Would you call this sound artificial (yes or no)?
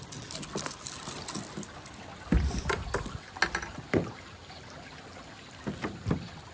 no